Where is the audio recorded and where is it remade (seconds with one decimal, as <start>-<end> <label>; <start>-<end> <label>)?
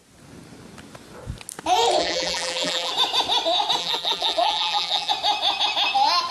0.0-2.0 recorded; 2.0-2.9 remade; 2.9-3.8 recorded; 3.8-5.1 remade; 5.1-6.3 recorded